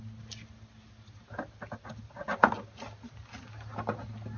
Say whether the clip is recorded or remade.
recorded